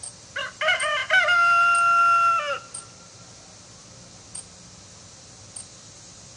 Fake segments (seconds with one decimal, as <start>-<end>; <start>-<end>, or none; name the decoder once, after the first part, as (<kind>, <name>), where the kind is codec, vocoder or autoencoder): none